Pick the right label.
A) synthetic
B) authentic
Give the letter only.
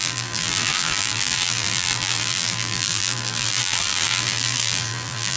A